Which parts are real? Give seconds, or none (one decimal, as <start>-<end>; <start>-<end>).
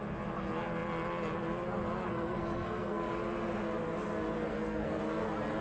0.0-2.1; 3.1-4.5; 5.0-5.6